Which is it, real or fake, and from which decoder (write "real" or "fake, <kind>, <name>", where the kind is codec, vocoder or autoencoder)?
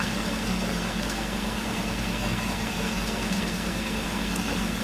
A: fake, codec, SNAC